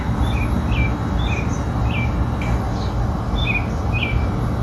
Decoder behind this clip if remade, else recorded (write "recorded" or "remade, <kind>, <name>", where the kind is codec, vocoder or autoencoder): recorded